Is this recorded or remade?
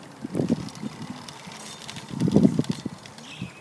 recorded